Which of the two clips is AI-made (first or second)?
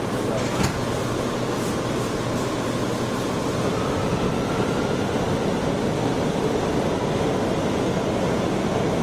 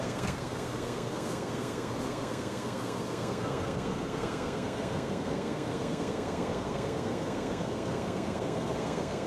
second